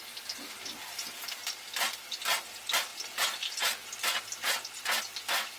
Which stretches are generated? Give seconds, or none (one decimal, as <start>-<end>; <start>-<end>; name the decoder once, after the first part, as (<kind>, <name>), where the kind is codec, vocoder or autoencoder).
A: none